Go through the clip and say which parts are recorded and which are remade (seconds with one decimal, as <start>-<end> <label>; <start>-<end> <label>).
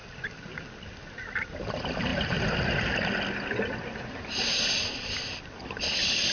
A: 0.0-6.3 recorded